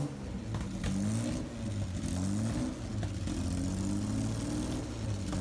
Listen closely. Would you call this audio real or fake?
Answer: real